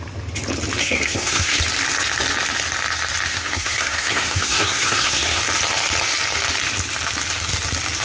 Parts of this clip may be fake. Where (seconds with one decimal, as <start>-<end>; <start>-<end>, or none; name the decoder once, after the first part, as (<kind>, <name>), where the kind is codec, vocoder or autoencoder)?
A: 0.8-1.6 (codec, SNAC); 3.3-5.4